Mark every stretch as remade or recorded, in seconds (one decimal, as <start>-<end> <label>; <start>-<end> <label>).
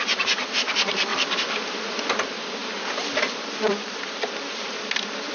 0.0-2.6 remade; 2.6-3.2 recorded; 3.2-5.3 remade